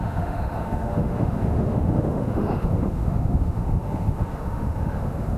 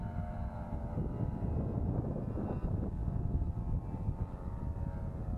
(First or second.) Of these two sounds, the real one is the second